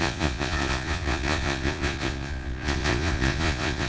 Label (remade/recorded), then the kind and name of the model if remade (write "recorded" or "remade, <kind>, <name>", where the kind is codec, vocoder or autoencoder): remade, vocoder, Vocos